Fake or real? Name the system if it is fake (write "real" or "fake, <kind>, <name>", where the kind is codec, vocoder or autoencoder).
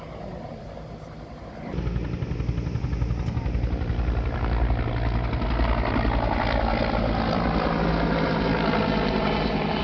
real